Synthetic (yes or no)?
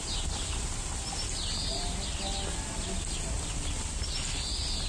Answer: no